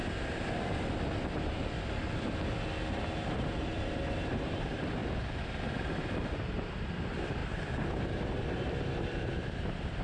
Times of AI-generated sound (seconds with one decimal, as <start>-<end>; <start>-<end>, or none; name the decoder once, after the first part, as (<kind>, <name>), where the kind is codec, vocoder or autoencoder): 3.0-5.0 (vocoder, BigVGAN v2); 6.0-10.0